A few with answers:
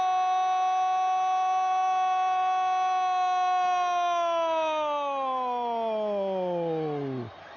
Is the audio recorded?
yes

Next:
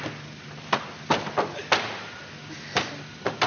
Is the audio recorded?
yes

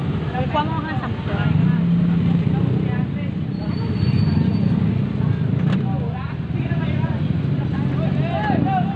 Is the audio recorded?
yes